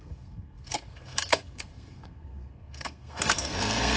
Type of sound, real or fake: fake